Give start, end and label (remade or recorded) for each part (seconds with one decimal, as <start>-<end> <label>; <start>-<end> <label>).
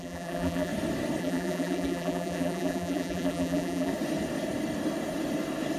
0.0-0.7 remade; 0.7-1.2 recorded; 1.2-3.9 remade; 3.9-5.8 recorded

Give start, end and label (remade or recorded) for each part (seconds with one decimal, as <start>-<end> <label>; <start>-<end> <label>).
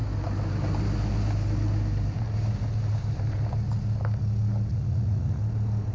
0.0-4.7 recorded; 4.7-5.4 remade; 5.4-5.9 recorded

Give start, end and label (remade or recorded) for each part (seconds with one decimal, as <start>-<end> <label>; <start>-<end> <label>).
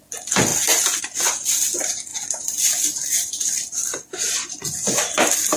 0.0-5.6 recorded